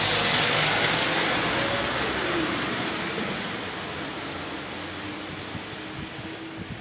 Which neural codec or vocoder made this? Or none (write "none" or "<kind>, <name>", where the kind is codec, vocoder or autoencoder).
none